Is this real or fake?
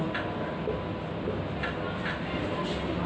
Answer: real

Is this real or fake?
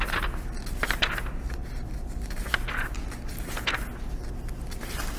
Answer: real